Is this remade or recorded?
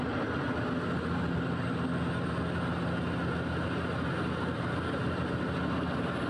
recorded